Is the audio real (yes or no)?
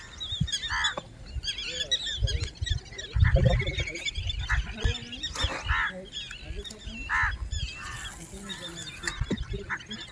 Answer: yes